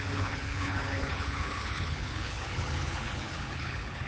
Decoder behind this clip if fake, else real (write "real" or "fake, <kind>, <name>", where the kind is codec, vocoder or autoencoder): fake, codec, HILCodec